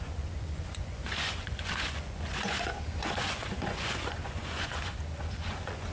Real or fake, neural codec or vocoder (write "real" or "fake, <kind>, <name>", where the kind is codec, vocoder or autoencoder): fake, vocoder, Vocos